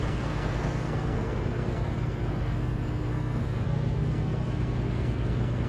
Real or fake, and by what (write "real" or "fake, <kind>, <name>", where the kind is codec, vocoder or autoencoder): fake, codec, SNAC